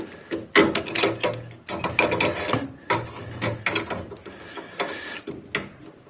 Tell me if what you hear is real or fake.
real